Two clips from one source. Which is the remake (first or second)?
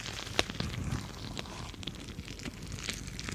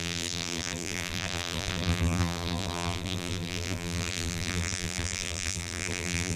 second